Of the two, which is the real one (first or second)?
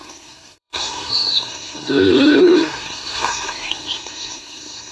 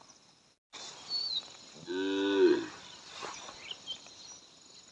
second